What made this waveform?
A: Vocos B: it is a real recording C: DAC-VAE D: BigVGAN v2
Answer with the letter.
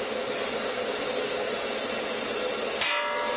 B